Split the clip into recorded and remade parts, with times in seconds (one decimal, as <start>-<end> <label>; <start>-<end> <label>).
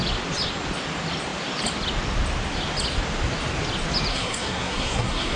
0.0-4.1 recorded; 4.1-5.4 remade